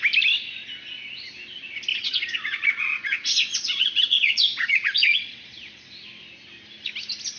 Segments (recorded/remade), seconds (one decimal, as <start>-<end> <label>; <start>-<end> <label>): 0.0-1.9 recorded; 1.9-5.8 remade; 5.8-7.4 recorded